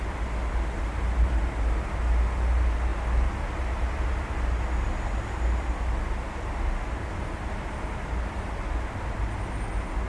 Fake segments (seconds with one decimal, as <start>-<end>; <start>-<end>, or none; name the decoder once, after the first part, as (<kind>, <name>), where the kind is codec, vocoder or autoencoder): none